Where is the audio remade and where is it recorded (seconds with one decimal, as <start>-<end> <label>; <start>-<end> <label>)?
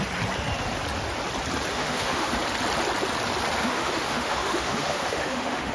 0.0-1.7 recorded; 1.7-2.3 remade; 2.3-3.6 recorded; 3.6-5.7 remade